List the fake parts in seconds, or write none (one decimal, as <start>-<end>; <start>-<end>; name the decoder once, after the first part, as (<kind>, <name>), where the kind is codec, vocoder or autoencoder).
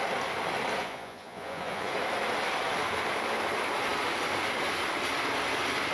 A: 0.8-1.9 (vocoder, Vocos)